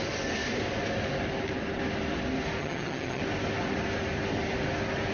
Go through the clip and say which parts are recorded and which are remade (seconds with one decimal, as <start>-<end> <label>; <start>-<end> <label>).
0.0-2.6 recorded; 2.6-3.2 remade; 3.2-5.1 recorded